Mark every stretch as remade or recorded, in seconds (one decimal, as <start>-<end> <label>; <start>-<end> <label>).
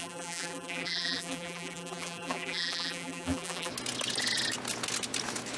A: 0.0-3.7 remade; 3.7-5.6 recorded